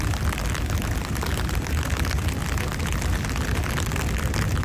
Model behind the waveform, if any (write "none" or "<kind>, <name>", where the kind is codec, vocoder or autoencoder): none